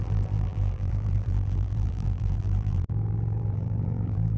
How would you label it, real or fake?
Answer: fake